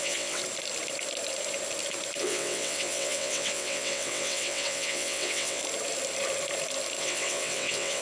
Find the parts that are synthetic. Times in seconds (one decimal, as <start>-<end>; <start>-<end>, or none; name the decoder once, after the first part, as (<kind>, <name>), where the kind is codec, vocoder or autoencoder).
0.0-0.4 (vocoder, WaveNeXt); 2.2-5.6; 7.0-8.0